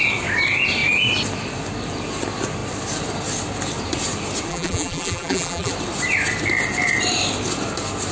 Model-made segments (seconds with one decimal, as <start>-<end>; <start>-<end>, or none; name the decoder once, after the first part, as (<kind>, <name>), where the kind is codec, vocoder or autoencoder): 4.5-5.7 (vocoder, BigVGAN v2)